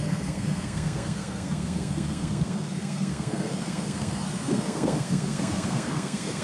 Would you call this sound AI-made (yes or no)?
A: yes